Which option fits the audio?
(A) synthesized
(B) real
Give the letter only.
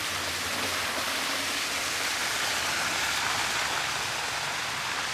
B